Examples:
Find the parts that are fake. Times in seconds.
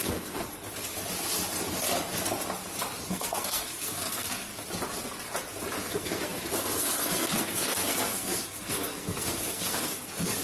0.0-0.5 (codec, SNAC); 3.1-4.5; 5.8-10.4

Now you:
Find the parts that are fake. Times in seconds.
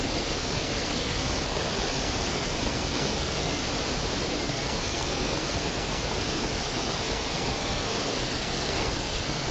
0.0-3.6 (codec, SNAC); 4.4-9.5